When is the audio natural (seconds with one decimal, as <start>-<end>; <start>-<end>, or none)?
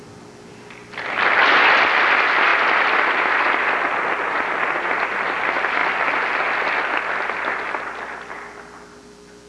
0.0-9.5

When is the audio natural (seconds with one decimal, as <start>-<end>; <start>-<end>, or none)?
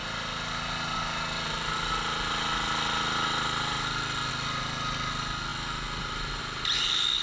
0.0-7.2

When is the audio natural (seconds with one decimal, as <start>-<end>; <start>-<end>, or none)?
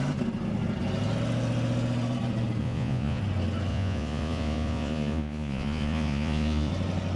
0.0-2.6; 3.2-3.7; 6.7-7.2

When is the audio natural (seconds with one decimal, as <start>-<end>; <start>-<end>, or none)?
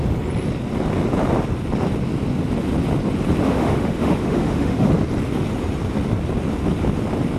0.0-3.4; 4.9-7.4